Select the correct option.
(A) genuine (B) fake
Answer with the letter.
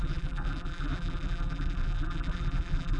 B